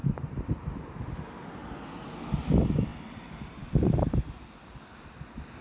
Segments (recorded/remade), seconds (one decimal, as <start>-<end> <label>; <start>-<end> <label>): 0.0-1.1 remade; 1.1-2.9 recorded; 2.9-4.5 remade; 4.5-5.6 recorded